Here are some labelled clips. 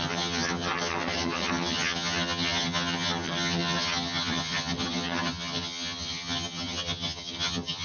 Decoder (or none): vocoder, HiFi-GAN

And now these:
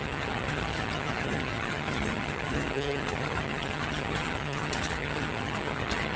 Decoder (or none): vocoder, HiFi-GAN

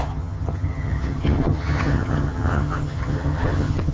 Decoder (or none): vocoder, HiFi-GAN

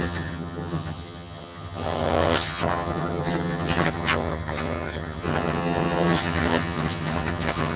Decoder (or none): vocoder, HiFi-GAN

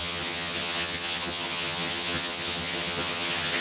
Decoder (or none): vocoder, HiFi-GAN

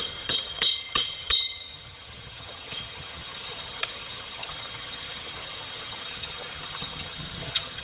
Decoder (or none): vocoder, HiFi-GAN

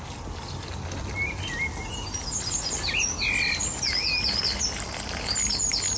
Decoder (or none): none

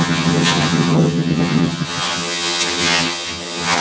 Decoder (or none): vocoder, HiFi-GAN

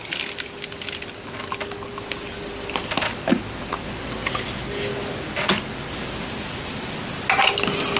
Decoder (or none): none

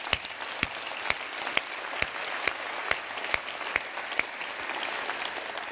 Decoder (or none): none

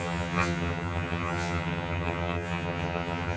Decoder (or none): vocoder, HiFi-GAN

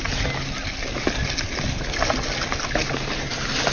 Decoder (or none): none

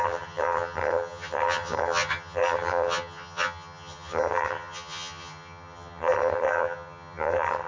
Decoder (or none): vocoder, HiFi-GAN